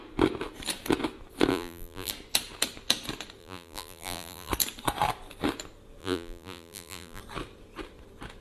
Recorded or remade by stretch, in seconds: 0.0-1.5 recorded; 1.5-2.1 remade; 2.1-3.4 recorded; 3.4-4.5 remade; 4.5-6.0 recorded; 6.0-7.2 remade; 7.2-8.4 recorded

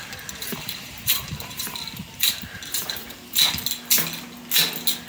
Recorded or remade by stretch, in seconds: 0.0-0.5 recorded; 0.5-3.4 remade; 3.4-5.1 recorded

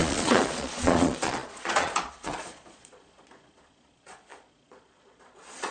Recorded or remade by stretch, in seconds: 0.0-5.7 remade